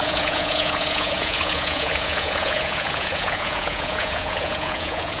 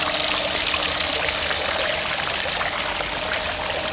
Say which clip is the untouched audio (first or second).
second